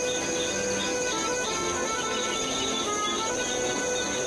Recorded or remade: recorded